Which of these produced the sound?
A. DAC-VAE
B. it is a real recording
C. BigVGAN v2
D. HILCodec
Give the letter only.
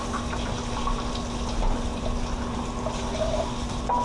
B